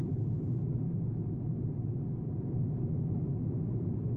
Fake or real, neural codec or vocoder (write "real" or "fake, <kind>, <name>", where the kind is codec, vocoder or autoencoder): real